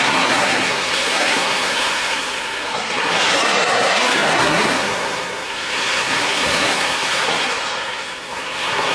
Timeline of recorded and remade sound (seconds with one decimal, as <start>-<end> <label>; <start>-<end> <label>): 0.0-8.9 remade